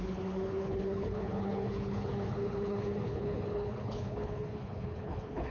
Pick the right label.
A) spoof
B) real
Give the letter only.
A